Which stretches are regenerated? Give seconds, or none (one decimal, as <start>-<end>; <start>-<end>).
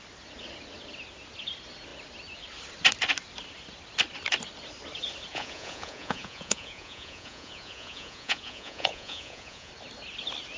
5.3-9.7